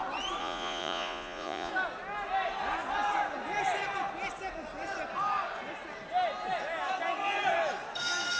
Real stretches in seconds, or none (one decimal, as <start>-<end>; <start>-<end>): 0.0-0.4; 1.7-8.4